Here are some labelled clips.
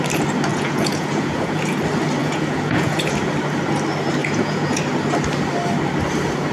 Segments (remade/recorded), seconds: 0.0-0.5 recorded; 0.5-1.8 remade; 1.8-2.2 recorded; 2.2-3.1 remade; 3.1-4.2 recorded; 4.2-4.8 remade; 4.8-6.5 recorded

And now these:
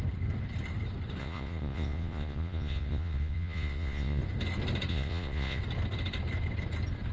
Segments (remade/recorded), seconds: 0.0-1.2 recorded; 1.2-4.2 remade; 4.2-4.9 recorded; 4.9-5.6 remade; 5.6-7.1 recorded

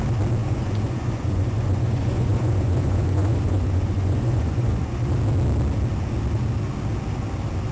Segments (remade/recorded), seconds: 0.0-0.4 recorded; 0.4-5.0 remade; 5.0-7.7 recorded

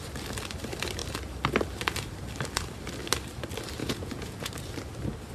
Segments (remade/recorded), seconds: 0.0-3.8 recorded; 3.8-4.5 remade; 4.5-5.3 recorded

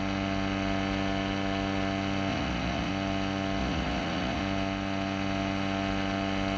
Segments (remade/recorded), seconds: 0.0-2.3 recorded; 2.3-2.9 remade; 2.9-3.6 recorded; 3.6-4.4 remade; 4.4-6.6 recorded

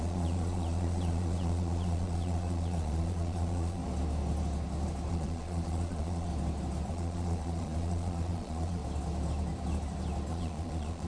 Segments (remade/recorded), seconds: 0.0-3.8 remade; 3.8-5.1 recorded; 5.1-6.3 remade; 6.3-6.9 recorded; 6.9-8.8 remade; 8.8-10.3 recorded; 10.3-11.1 remade

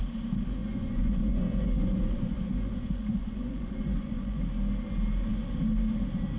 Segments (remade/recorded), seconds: 0.0-0.6 recorded; 0.6-4.4 remade; 4.4-6.4 recorded

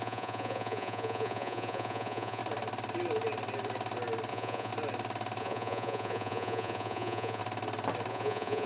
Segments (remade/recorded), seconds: 0.0-2.4 remade; 2.4-4.3 recorded; 4.3-4.7 remade; 4.7-5.4 recorded; 5.4-7.4 remade; 7.4-8.1 recorded; 8.1-8.7 remade